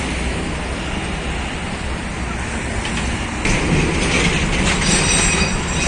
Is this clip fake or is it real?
real